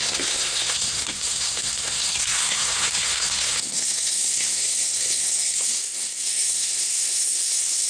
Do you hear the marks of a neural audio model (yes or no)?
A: yes